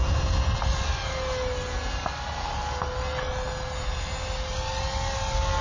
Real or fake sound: real